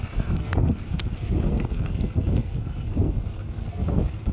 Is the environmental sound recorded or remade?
remade